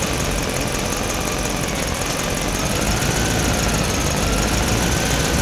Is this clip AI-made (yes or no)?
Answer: no